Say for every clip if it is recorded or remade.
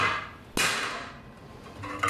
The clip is recorded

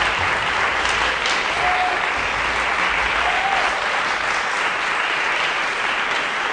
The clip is recorded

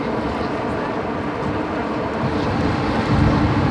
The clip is remade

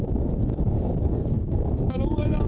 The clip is remade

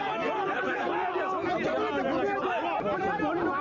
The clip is recorded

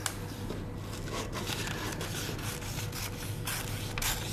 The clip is recorded